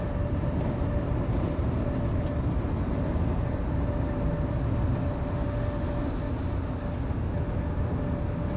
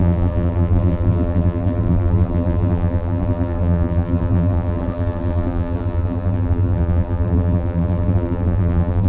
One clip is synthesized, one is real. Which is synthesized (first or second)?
second